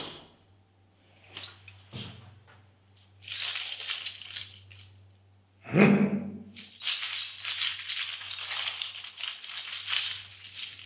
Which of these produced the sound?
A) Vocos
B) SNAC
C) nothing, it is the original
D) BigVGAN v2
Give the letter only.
C